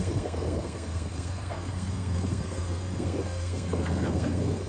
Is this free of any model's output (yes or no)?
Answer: no